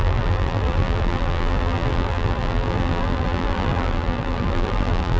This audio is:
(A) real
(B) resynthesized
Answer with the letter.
B